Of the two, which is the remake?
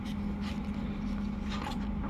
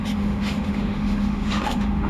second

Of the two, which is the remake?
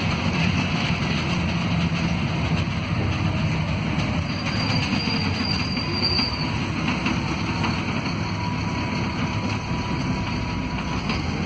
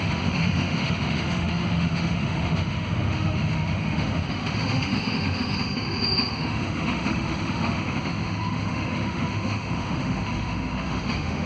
second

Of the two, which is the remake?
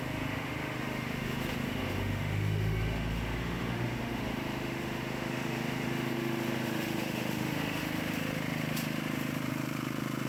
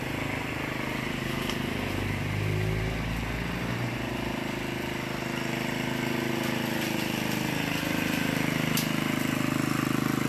first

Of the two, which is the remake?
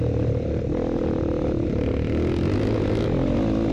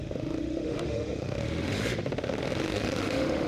second